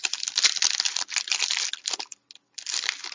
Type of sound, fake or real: real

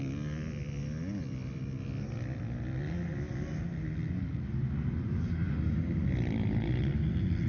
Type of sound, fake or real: real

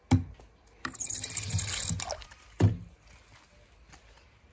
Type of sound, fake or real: real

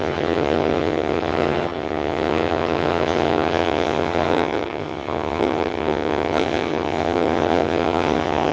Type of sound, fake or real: fake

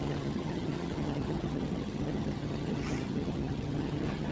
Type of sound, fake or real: fake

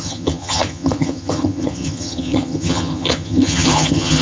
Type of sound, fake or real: fake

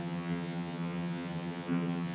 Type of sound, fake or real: fake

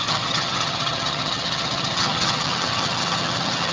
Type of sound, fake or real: fake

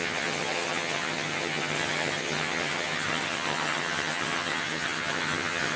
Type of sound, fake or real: fake